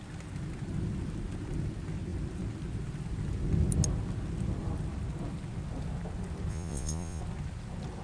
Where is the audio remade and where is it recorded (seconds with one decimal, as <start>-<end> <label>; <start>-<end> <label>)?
0.0-6.5 recorded; 6.5-7.2 remade; 7.2-8.0 recorded